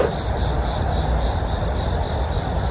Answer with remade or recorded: remade